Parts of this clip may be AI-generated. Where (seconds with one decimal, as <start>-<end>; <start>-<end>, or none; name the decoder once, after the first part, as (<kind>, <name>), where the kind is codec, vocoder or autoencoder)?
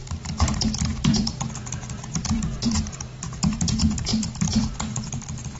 0.0-5.6 (vocoder, BigVGAN v2)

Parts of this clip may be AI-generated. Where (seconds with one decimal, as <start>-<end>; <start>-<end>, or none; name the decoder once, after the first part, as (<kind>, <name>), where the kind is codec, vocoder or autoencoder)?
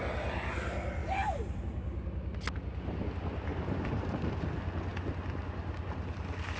1.0-1.6 (vocoder, BigVGAN v2); 3.5-4.2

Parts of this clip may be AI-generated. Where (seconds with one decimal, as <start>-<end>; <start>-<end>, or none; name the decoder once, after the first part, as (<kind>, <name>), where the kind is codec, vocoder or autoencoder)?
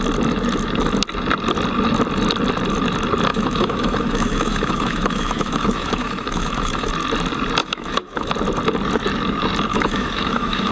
3.3-6.9 (autoencoder, DAC-VAE); 7.6-8.3; 9.7-10.7